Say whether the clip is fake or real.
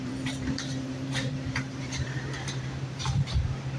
fake